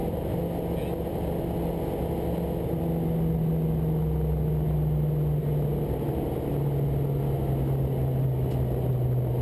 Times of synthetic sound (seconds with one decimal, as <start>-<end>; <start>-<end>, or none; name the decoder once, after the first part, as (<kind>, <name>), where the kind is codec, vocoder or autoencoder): none